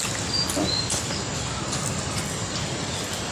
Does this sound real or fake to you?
real